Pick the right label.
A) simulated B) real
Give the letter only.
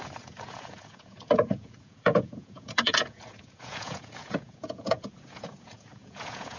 A